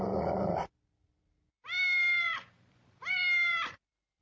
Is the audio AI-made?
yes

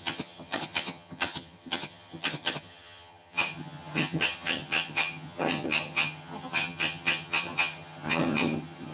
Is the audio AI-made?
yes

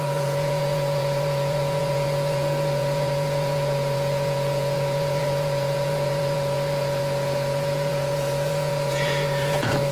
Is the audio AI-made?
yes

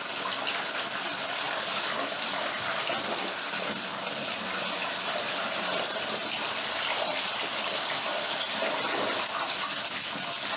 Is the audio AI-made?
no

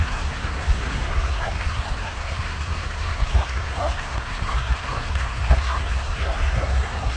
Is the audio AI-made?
yes